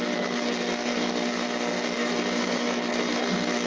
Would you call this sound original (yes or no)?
no